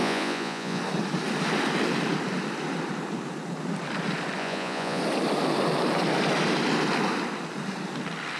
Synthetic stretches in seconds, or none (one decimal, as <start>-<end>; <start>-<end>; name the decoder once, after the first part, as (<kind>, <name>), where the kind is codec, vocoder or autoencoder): 0.0-0.8 (vocoder, Vocos); 4.4-5.0